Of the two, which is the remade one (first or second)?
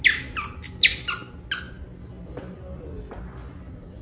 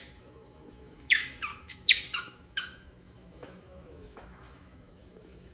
second